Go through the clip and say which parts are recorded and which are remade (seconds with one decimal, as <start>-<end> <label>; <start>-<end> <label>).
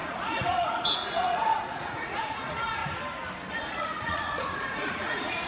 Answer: 0.0-2.8 remade; 2.8-3.5 recorded; 3.5-5.5 remade